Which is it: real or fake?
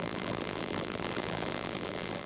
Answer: fake